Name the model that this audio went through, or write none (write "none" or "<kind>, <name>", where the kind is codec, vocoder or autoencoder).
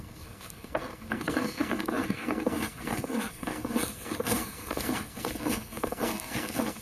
codec, SNAC